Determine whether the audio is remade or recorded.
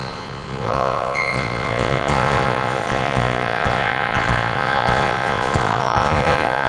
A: remade